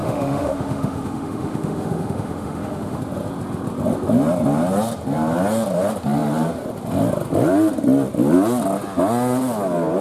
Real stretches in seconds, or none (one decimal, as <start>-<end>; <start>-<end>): 3.0-10.0